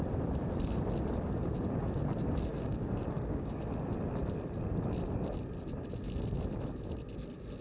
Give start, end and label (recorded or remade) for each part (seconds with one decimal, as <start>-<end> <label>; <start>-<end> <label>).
0.0-2.5 recorded; 2.5-3.6 remade; 3.6-7.6 recorded